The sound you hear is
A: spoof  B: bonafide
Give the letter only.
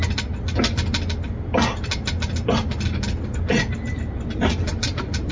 B